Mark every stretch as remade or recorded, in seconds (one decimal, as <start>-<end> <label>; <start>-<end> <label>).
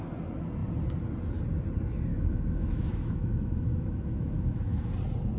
0.0-2.1 recorded; 2.1-4.9 remade; 4.9-5.4 recorded